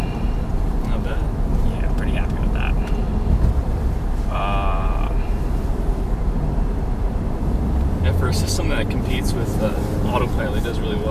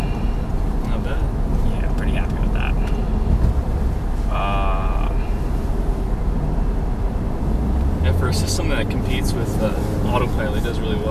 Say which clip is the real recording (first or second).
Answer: second